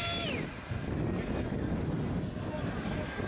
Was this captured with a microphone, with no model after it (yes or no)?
yes